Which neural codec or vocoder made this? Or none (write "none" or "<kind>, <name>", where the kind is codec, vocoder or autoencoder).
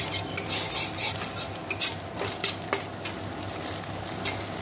none